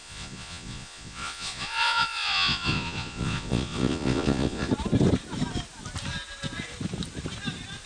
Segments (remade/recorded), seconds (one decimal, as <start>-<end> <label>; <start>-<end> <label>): 0.0-4.7 remade; 4.7-7.9 recorded